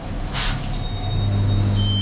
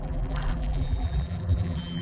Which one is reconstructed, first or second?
second